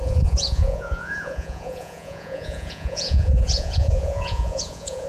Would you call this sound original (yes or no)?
no